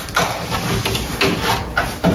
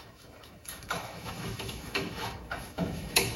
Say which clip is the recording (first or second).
first